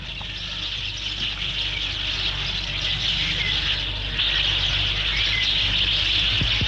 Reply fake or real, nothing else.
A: real